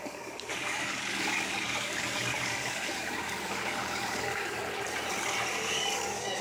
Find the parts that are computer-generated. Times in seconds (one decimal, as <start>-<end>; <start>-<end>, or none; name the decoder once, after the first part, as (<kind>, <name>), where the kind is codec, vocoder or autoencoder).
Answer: 0.0-4.6 (codec, DAC); 5.5-6.4